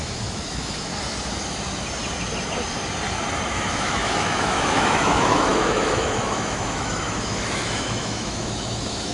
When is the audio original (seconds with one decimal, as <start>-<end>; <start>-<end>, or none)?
0.9-3.5